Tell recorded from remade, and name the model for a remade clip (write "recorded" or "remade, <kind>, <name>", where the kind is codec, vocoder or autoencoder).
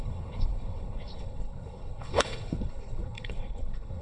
remade, codec, HILCodec